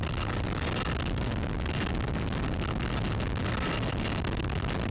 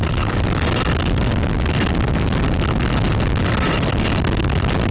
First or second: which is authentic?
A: first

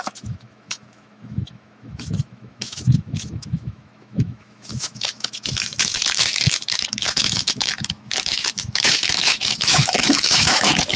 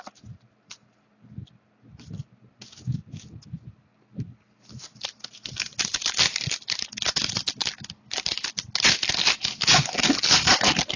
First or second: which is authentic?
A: second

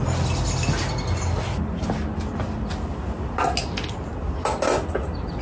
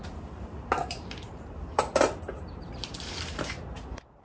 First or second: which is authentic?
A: first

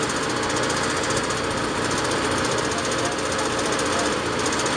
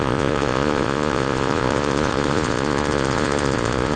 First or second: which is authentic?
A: first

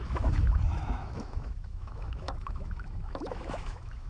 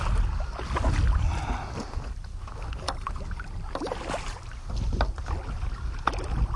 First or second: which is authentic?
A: second